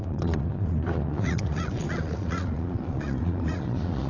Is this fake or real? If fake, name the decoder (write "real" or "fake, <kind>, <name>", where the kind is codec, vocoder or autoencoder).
fake, vocoder, Vocos